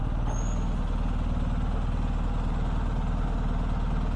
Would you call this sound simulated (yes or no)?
no